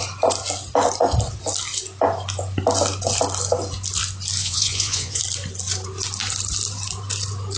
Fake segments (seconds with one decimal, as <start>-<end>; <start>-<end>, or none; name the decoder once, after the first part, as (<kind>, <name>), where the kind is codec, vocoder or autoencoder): 4.4-5.2 (vocoder, Vocos)